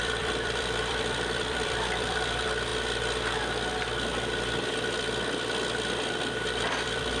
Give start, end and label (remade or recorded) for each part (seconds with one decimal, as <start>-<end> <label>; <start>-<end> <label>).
0.0-2.7 remade; 2.7-6.2 recorded; 6.2-7.2 remade